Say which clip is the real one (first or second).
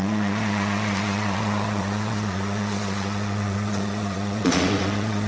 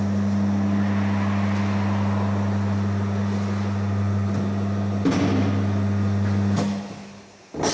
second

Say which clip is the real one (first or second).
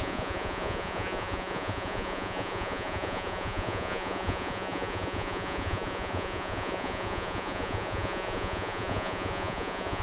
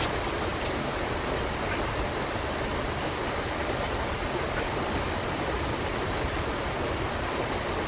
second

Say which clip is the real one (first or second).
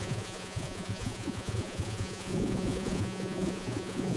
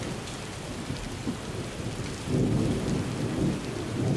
second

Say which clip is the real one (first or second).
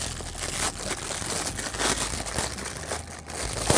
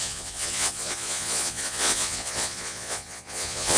first